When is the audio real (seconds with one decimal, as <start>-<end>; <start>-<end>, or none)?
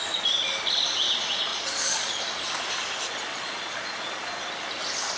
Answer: 0.0-1.5; 2.2-3.3; 4.3-5.2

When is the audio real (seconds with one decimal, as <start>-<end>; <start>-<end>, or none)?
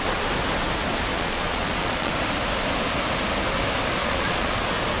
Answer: 0.0-1.1; 2.1-4.0; 4.5-5.0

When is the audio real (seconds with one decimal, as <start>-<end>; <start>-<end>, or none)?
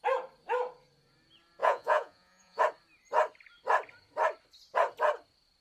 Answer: 0.0-1.6; 2.6-5.6